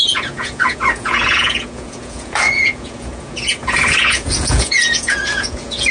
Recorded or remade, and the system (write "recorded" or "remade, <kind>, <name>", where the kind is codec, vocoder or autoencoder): remade, vocoder, Vocos